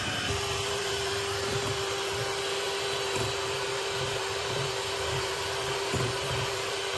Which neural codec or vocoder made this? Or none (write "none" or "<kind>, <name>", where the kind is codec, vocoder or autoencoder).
vocoder, BigVGAN v2